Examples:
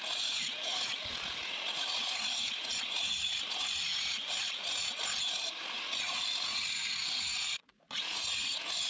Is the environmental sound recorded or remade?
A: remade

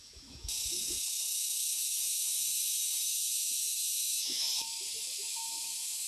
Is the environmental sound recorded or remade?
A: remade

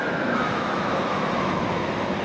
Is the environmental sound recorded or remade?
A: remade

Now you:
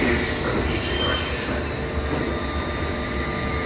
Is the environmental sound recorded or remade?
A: recorded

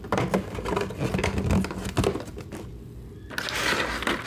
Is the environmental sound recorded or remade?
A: recorded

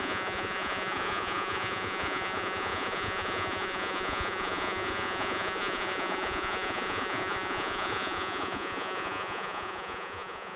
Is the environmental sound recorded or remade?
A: remade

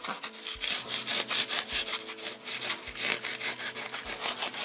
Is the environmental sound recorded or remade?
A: recorded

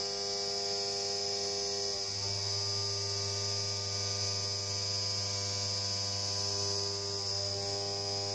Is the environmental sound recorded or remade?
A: recorded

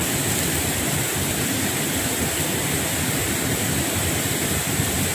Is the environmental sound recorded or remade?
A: recorded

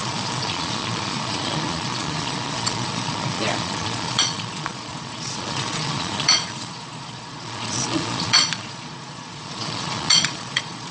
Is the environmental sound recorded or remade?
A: remade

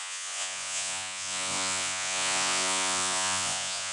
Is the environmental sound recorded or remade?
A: remade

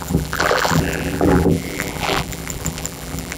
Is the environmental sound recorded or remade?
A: remade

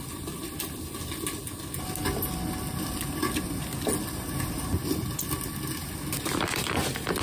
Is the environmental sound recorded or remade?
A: recorded